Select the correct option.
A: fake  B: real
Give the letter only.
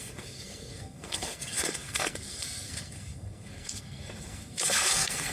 A